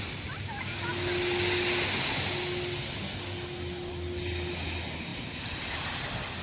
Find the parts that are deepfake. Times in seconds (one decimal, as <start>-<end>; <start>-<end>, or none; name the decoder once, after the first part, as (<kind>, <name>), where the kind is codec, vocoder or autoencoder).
none